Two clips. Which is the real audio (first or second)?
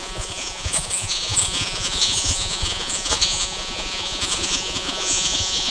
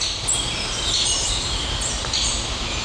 second